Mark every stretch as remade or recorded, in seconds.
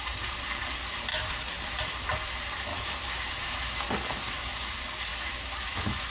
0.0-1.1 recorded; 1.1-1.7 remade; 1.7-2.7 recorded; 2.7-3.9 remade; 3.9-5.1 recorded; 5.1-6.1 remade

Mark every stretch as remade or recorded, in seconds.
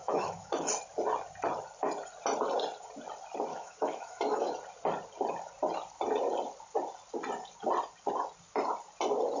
0.0-0.7 remade; 0.7-3.5 recorded; 3.5-4.5 remade; 4.5-9.4 recorded